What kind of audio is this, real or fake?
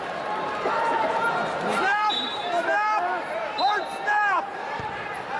fake